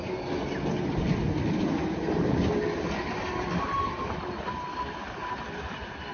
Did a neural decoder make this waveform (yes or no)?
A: no